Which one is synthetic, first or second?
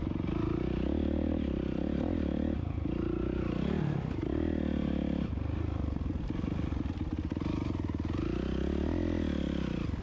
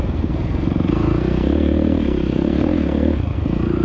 second